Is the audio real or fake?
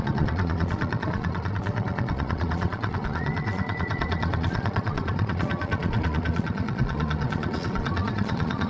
fake